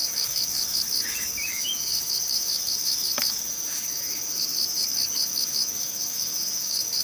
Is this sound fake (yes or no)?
yes